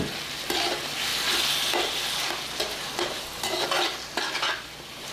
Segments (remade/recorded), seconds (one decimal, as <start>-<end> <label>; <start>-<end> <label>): 0.0-5.1 recorded